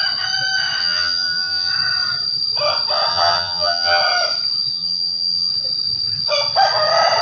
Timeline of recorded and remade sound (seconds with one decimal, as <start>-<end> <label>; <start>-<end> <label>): 0.0-0.8 recorded; 0.8-1.7 remade; 1.7-3.1 recorded; 3.1-4.0 remade; 4.0-4.7 recorded; 4.7-5.5 remade; 5.5-7.2 recorded